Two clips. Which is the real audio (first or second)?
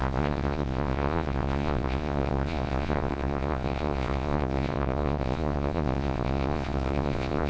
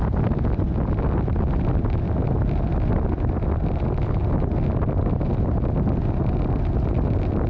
second